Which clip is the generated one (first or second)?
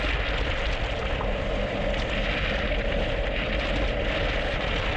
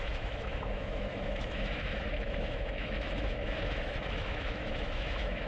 second